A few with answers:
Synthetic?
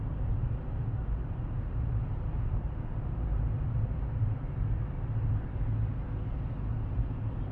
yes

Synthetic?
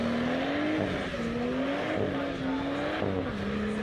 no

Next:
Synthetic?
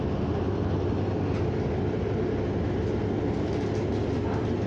no